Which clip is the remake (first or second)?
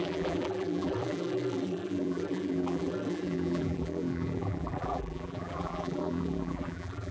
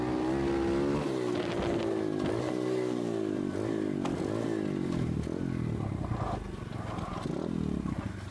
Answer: first